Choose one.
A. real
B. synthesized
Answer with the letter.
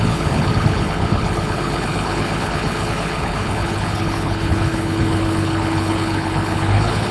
B